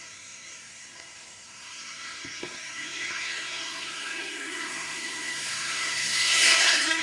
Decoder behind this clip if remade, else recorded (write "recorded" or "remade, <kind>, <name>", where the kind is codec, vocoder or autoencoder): remade, codec, SNAC